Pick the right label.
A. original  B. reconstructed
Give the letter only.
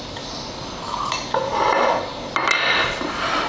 A